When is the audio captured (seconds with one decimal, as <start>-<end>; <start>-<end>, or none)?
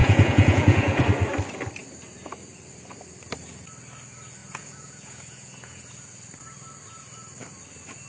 1.0-4.4; 5.8-8.1